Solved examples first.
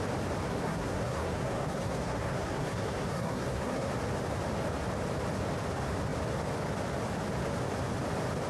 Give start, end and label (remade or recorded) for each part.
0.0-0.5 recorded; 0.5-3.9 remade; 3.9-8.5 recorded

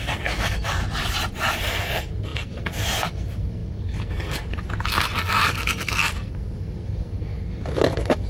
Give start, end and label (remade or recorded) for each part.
0.0-0.8 remade; 0.8-1.6 recorded; 1.6-8.3 remade

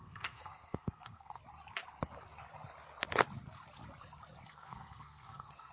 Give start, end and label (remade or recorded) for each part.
0.0-1.4 remade; 1.4-4.5 recorded; 4.5-5.7 remade

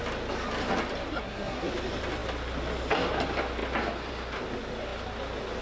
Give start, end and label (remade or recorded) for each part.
0.0-1.1 recorded; 1.1-1.7 remade; 1.7-5.6 recorded

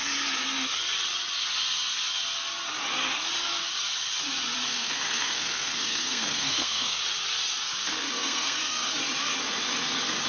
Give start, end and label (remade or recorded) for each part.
0.0-4.7 recorded; 4.7-7.0 remade; 7.0-7.8 recorded; 7.8-8.9 remade; 8.9-10.3 recorded

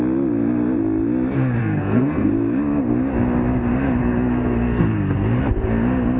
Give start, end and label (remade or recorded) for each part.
0.0-1.6 recorded; 1.6-2.3 remade; 2.3-4.0 recorded; 4.0-5.4 remade; 5.4-6.2 recorded

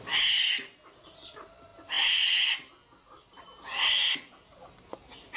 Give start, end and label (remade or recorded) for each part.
0.0-5.4 recorded

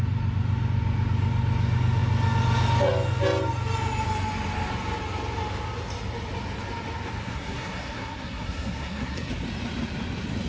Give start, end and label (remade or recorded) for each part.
0.0-7.2 recorded; 7.2-9.3 remade; 9.3-10.5 recorded